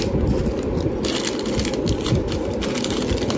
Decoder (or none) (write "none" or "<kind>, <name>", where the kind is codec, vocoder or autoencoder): none